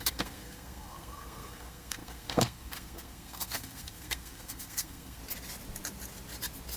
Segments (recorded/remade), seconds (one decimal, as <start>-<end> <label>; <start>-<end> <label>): 0.0-5.2 remade; 5.2-6.8 recorded